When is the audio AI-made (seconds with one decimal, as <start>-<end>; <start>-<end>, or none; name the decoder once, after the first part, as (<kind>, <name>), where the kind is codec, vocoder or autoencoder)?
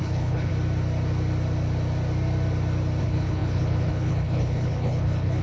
0.0-0.5 (codec, HILCodec); 3.0-5.4